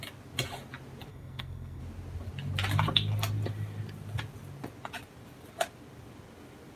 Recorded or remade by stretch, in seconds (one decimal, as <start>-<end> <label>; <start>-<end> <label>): 0.0-1.1 recorded; 1.1-1.8 remade; 1.8-6.8 recorded